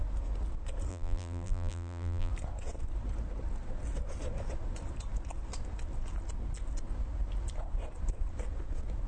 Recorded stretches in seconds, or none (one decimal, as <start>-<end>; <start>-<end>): 0.0-0.9; 2.3-9.1